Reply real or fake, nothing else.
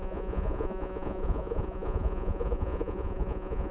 fake